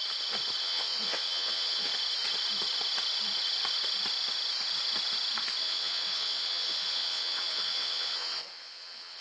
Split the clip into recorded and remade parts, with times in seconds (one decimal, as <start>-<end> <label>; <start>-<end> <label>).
0.0-0.6 recorded; 0.6-1.9 remade; 1.9-5.6 recorded; 5.6-9.2 remade